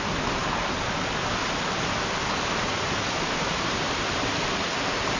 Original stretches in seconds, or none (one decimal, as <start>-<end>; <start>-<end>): 0.0-5.2